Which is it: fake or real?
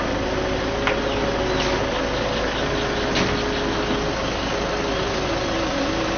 real